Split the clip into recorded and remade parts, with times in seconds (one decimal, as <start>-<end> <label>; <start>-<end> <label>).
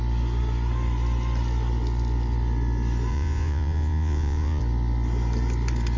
0.0-3.1 recorded; 3.1-4.6 remade; 4.6-6.0 recorded